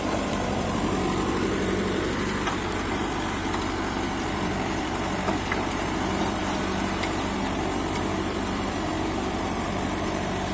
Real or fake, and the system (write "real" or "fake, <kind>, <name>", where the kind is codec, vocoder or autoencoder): fake, vocoder, BigVGAN v2